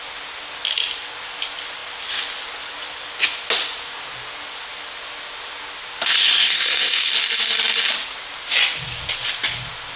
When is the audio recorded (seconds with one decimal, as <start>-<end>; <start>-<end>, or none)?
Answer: 0.0-6.1; 7.1-10.0